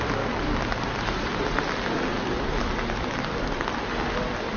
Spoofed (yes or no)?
no